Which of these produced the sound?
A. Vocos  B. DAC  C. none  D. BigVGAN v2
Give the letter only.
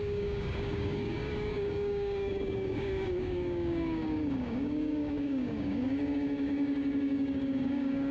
B